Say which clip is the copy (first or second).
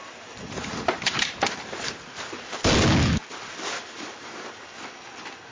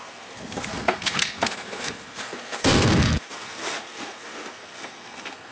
second